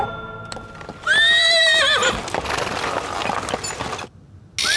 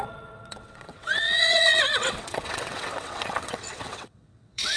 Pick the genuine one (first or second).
first